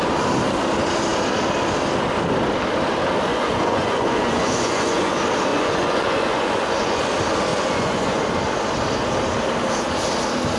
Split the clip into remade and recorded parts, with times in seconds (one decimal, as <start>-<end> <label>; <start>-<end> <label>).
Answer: 0.0-3.3 recorded; 3.3-5.1 remade; 5.1-5.5 recorded; 5.5-7.0 remade; 7.0-7.5 recorded; 7.5-8.2 remade; 8.2-10.6 recorded